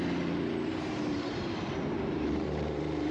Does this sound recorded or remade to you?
remade